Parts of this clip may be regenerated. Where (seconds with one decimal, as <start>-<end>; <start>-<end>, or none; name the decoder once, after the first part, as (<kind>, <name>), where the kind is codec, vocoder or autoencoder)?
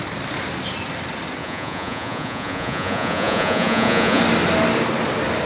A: 1.4-4.2 (vocoder, Vocos)